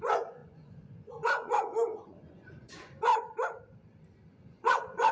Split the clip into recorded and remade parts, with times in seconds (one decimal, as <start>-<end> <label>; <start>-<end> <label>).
0.0-3.1 remade; 3.1-4.3 recorded; 4.3-5.1 remade